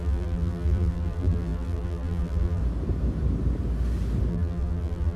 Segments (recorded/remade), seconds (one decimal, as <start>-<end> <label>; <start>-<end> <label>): 0.0-2.6 remade; 2.6-4.3 recorded; 4.3-5.2 remade